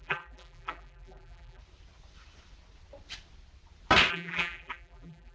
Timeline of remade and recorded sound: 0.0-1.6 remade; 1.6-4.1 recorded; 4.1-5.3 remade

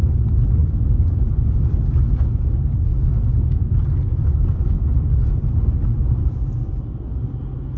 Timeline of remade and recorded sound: 0.0-0.6 recorded; 0.6-1.7 remade; 1.7-2.9 recorded; 2.9-4.7 remade; 4.7-5.9 recorded; 5.9-6.7 remade; 6.7-7.8 recorded

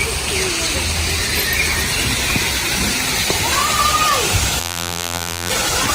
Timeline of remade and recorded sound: 0.0-4.6 recorded; 4.6-5.5 remade; 5.5-5.9 recorded

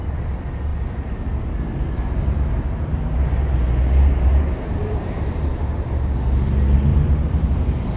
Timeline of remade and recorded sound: 0.0-4.8 recorded; 4.8-5.5 remade; 5.5-6.9 recorded; 6.9-8.0 remade

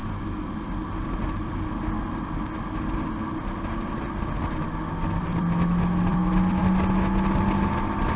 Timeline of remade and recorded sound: 0.0-4.9 recorded; 4.9-6.6 remade; 6.6-8.2 recorded